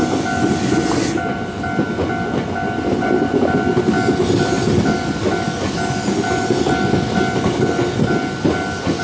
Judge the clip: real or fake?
real